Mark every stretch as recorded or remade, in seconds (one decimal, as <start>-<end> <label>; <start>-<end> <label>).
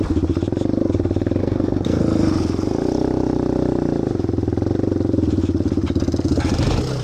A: 0.0-1.4 recorded; 1.4-2.0 remade; 2.0-7.0 recorded